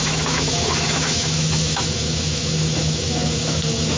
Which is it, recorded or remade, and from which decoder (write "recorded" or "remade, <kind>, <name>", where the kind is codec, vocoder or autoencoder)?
remade, autoencoder, DAC-VAE